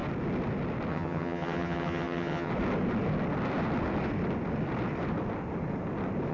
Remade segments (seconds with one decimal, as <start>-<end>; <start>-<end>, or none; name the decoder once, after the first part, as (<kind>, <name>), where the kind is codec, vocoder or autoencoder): 0.9-2.5 (vocoder, HiFi-GAN)